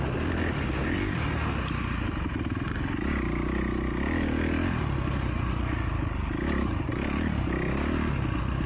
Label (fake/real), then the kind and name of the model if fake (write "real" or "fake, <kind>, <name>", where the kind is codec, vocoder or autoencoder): real